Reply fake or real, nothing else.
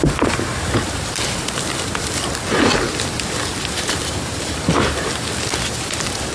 real